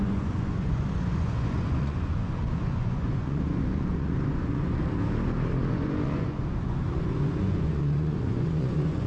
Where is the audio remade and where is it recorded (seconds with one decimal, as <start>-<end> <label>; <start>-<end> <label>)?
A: 0.0-4.8 remade; 4.8-5.7 recorded; 5.7-9.1 remade